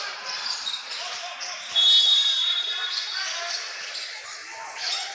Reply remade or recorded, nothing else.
recorded